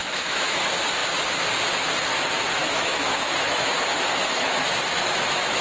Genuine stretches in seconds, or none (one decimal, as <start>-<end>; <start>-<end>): 0.6-2.6